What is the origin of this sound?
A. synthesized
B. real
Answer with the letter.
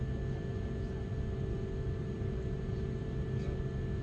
B